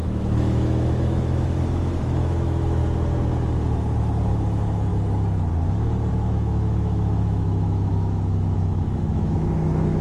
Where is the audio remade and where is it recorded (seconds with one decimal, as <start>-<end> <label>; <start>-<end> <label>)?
0.0-2.8 remade; 2.8-4.3 recorded; 4.3-4.9 remade; 4.9-6.1 recorded; 6.1-10.0 remade